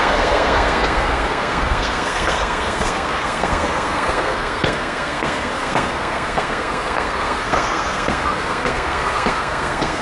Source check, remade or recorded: remade